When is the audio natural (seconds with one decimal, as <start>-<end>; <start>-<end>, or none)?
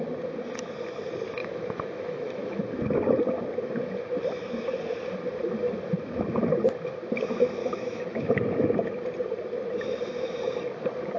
0.0-1.4; 2.6-7.6; 8.2-11.2